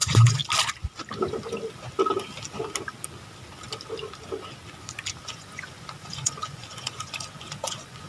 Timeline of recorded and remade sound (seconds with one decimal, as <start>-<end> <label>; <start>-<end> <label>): 0.0-0.4 remade; 0.4-5.3 recorded; 5.3-8.1 remade